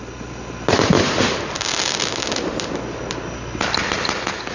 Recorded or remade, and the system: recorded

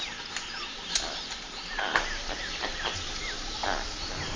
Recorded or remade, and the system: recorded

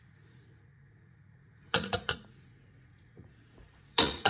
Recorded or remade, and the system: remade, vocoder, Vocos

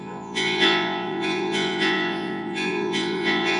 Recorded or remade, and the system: remade, vocoder, Vocos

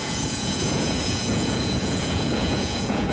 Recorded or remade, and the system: remade, vocoder, Vocos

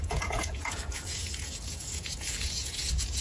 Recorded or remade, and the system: remade, vocoder, Vocos